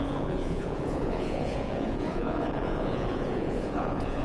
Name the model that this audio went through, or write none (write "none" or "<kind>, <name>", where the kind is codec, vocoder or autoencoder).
vocoder, Vocos